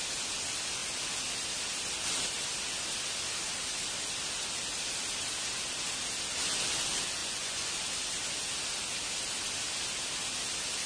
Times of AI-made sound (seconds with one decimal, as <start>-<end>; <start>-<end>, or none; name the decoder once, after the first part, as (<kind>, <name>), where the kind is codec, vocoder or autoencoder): 7.2-7.7 (vocoder, Vocos)